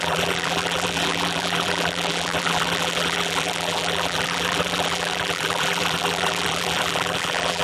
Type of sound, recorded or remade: remade